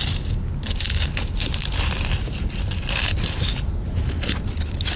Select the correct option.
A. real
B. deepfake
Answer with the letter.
A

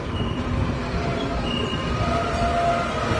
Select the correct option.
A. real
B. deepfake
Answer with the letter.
A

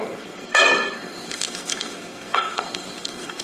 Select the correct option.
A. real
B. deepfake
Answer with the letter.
B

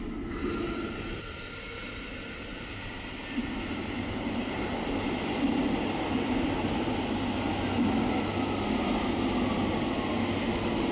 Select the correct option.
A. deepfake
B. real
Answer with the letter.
B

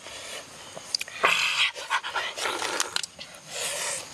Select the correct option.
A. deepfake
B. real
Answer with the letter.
B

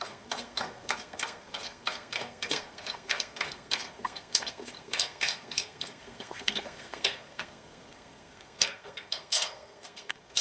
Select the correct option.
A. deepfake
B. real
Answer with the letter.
A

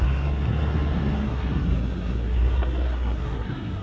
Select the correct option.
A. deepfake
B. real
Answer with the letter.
A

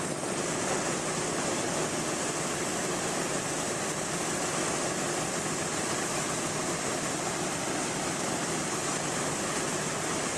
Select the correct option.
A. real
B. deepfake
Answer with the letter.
A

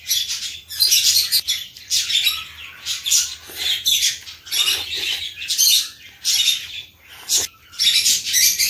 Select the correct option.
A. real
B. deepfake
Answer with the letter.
A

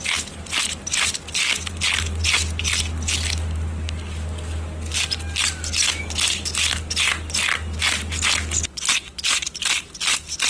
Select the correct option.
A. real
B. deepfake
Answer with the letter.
A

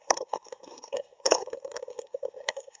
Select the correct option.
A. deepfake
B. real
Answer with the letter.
A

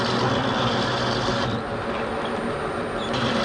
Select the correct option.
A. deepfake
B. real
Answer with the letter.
B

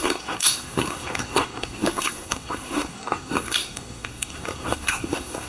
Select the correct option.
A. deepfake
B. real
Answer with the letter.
A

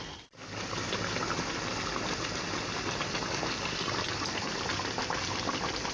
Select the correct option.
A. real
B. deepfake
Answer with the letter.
A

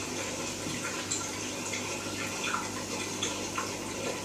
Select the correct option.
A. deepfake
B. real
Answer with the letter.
B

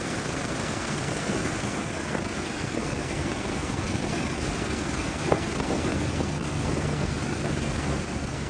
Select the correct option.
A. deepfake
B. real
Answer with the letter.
A